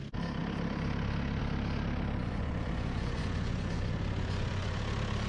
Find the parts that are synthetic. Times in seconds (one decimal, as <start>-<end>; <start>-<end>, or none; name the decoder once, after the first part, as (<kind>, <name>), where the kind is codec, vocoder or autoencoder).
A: 2.2-4.8 (vocoder, Vocos)